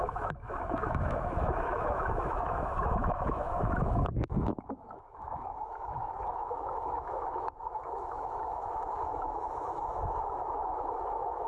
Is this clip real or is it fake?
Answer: fake